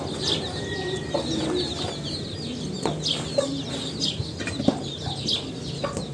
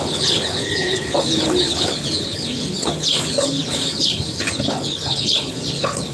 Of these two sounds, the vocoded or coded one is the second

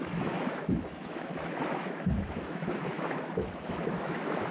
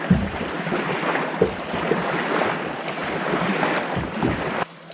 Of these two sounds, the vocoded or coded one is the first